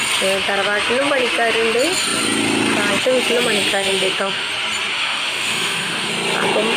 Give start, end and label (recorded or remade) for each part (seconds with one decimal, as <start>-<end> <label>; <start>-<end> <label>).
0.0-3.7 recorded; 3.7-4.5 remade; 4.5-4.9 recorded; 4.9-6.1 remade; 6.1-6.8 recorded